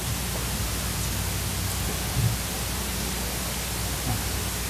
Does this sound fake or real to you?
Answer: real